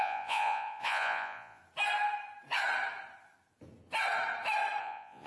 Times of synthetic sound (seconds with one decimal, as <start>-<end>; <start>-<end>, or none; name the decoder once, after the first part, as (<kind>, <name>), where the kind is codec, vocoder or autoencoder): 0.0-1.6 (vocoder, Vocos); 4.8-5.3